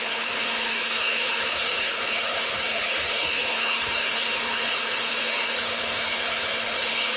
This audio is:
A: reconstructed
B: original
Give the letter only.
A